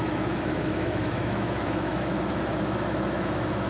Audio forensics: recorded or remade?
remade